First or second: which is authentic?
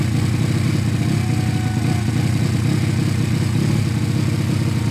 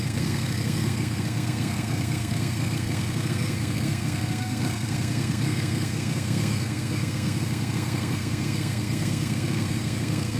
first